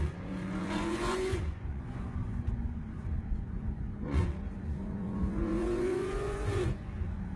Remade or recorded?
remade